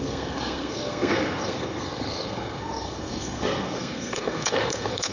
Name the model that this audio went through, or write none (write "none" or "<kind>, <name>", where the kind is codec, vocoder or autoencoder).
codec, SNAC